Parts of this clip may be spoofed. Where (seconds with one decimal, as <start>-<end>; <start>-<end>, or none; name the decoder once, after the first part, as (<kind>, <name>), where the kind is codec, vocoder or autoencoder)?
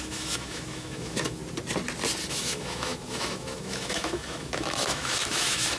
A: 0.0-1.4 (autoencoder, DAC-VAE); 2.3-5.8